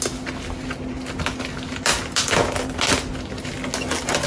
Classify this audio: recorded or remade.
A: recorded